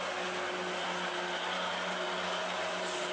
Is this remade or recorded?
recorded